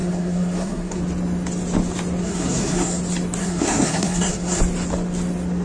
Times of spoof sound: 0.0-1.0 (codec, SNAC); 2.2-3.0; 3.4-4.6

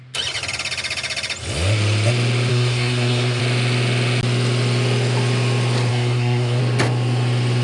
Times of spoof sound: 2.5-3.4 (codec, SNAC); 5.9-6.6

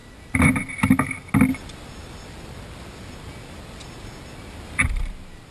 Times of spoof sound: none

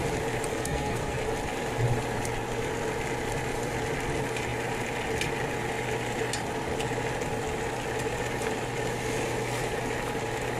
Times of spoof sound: 0.5-1.2 (codec, SNAC)

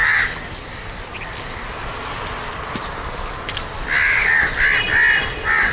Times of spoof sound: none

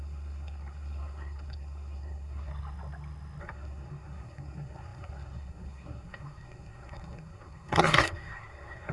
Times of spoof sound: 0.0-2.5 (codec, SNAC); 3.4-8.9

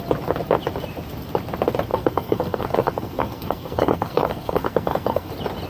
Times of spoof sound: 1.9-5.3 (codec, SNAC)